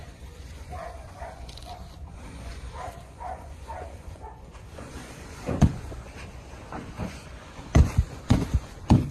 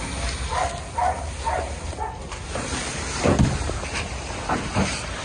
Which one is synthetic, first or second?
first